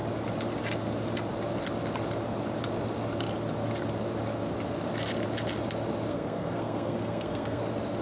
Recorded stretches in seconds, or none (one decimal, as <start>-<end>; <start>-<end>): 0.0-6.1; 7.6-8.0